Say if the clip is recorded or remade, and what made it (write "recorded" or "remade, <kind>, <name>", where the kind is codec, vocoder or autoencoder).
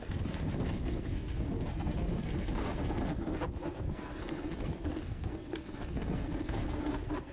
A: remade, codec, SNAC